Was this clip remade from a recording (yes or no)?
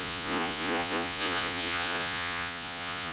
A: yes